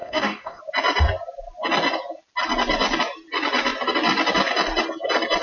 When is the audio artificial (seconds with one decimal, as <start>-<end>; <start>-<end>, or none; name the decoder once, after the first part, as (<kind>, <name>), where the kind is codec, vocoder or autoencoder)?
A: 0.0-0.6 (codec, DAC)